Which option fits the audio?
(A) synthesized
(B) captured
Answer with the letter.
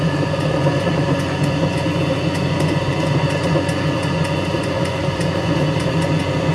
A